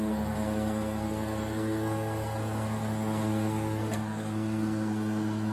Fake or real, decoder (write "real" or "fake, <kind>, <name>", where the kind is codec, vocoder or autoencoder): fake, codec, SNAC